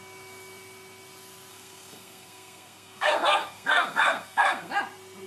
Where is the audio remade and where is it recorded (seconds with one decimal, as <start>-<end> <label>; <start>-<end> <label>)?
0.0-1.5 recorded; 1.5-4.7 remade; 4.7-5.3 recorded